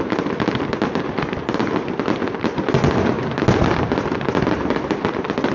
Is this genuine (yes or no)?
yes